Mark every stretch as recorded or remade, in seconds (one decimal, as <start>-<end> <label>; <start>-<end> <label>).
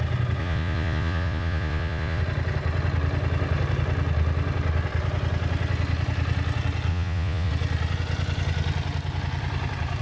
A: 0.0-0.4 recorded; 0.4-2.2 remade; 2.2-6.9 recorded; 6.9-7.5 remade; 7.5-10.0 recorded